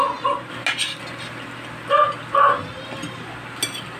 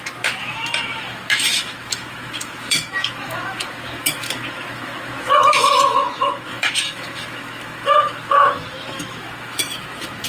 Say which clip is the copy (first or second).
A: second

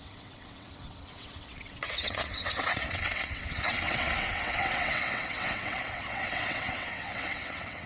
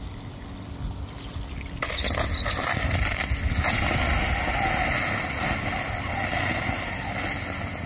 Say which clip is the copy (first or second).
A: first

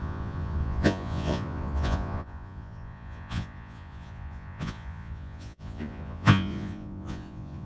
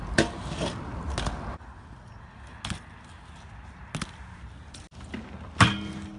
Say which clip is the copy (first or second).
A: first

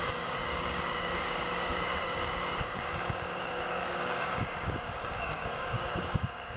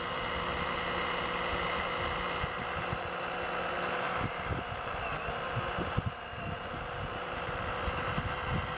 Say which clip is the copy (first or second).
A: first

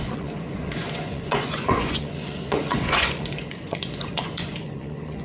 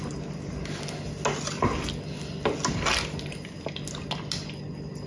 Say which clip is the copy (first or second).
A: first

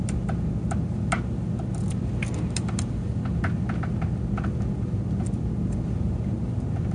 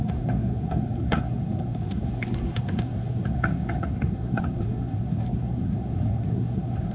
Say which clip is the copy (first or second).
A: second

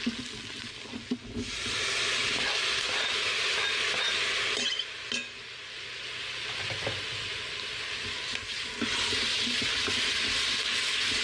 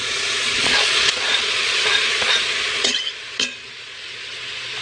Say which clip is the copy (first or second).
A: second